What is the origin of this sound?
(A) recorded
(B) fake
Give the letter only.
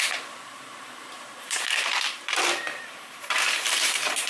B